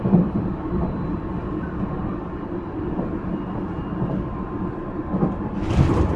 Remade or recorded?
recorded